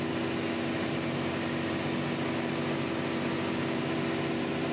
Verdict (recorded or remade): recorded